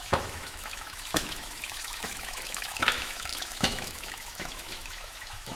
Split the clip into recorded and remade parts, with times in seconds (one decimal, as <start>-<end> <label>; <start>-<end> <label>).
0.0-5.6 remade